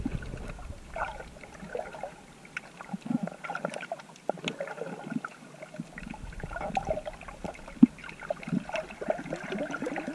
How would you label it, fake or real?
real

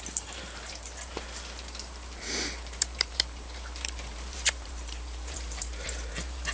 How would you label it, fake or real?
fake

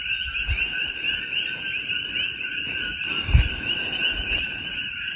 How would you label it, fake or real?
fake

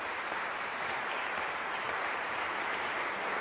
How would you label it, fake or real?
fake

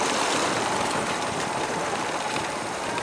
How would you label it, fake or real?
fake